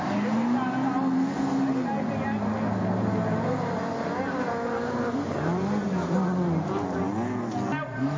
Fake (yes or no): no